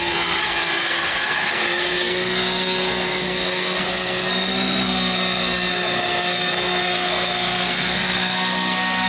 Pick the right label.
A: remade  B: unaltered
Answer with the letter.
A